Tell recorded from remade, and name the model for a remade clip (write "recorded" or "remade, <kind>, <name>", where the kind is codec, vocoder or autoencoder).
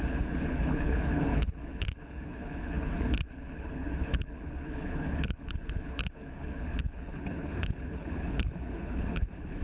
remade, codec, HILCodec